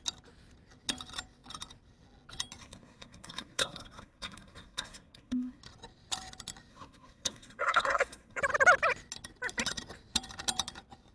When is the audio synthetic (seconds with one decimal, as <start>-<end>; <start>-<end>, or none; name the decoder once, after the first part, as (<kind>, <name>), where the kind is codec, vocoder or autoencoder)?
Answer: 2.6-5.6 (codec, SNAC); 6.7-8.4